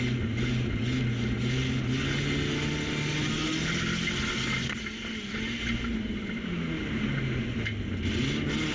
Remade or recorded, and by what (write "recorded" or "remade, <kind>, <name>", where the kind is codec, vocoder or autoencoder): recorded